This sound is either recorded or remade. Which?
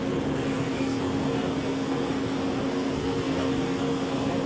remade